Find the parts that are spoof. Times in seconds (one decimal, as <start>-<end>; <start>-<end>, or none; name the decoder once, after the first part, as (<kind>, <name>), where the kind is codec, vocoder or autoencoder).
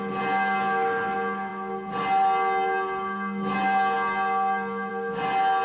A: none